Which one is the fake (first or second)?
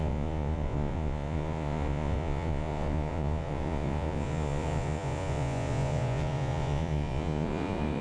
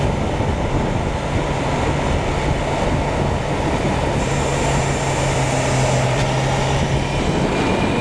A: first